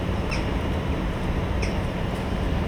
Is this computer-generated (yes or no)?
no